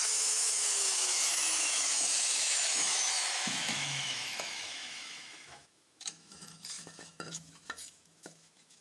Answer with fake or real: fake